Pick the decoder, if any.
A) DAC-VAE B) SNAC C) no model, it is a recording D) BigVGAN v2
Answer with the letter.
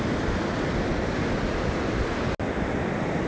C